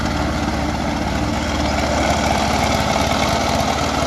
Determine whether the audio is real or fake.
real